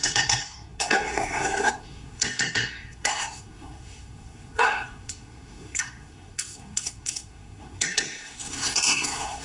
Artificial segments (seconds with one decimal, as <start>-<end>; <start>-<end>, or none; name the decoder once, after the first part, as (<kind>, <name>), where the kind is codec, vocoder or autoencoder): 0.0-9.4 (codec, SNAC)